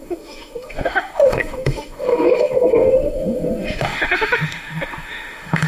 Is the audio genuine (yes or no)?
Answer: no